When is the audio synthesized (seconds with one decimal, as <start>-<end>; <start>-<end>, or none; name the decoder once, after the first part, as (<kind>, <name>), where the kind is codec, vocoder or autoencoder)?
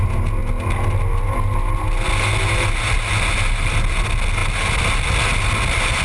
none